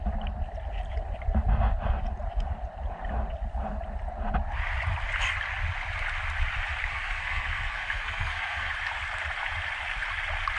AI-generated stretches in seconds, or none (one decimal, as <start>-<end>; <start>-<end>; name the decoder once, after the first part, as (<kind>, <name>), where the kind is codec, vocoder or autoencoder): 6.9-8.7 (codec, SNAC)